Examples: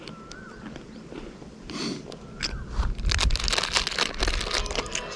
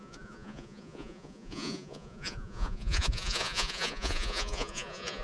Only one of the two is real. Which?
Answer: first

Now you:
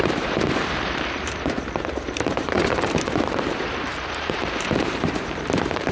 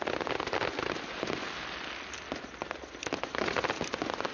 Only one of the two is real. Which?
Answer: second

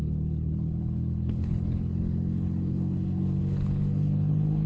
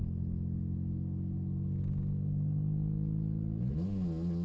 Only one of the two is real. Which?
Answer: second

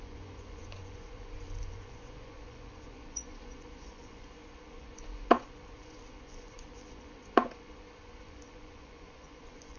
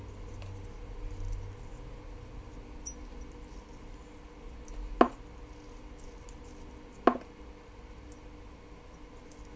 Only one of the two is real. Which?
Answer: second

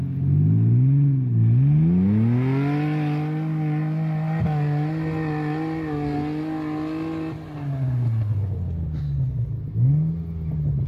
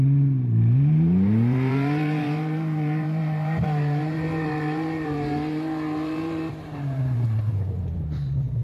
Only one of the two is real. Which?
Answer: first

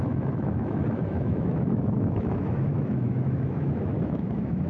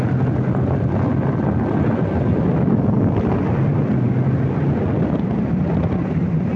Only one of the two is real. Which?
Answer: second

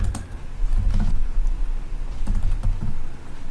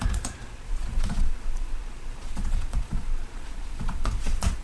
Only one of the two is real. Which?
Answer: first